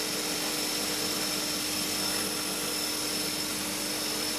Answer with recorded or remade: recorded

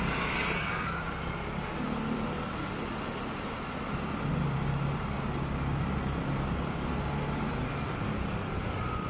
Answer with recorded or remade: recorded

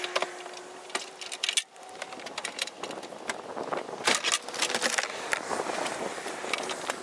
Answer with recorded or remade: recorded